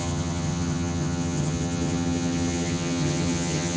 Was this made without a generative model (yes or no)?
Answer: no